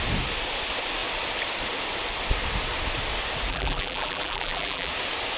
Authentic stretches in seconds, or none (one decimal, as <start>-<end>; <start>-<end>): 0.0-3.5; 4.9-5.4